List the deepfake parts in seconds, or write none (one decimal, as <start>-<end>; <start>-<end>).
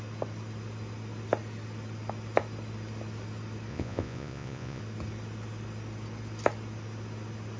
3.7-4.8